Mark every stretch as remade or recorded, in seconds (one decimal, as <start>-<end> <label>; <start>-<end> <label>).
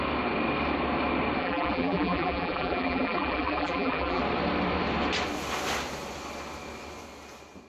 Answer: 0.0-1.4 recorded; 1.4-4.2 remade; 4.2-7.7 recorded